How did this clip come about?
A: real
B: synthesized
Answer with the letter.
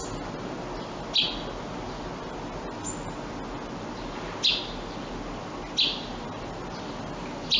A